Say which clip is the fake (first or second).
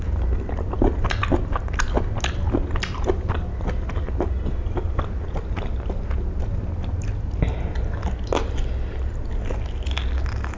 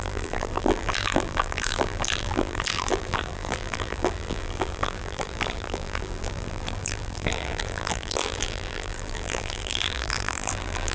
second